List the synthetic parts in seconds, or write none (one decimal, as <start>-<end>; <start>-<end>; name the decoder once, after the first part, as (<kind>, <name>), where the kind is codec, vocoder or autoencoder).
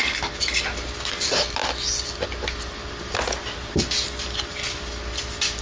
none